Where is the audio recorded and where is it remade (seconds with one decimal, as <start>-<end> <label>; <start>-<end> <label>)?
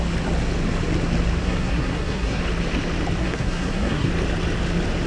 0.0-1.4 recorded; 1.4-2.4 remade; 2.4-3.2 recorded; 3.2-4.1 remade; 4.1-5.1 recorded